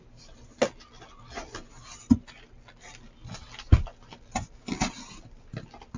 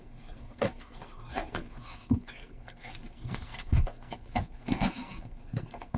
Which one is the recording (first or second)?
first